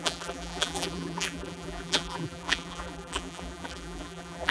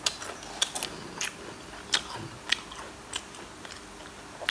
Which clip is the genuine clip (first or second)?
second